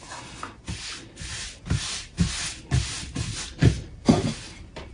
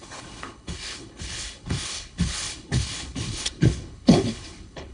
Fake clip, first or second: second